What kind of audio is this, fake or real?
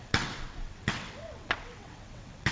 fake